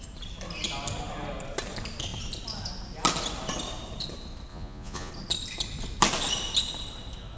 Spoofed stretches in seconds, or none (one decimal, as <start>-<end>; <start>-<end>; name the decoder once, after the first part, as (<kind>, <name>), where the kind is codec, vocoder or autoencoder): 4.5-5.1 (vocoder, Vocos)